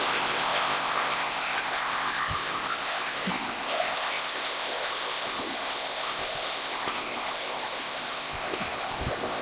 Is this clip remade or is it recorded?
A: remade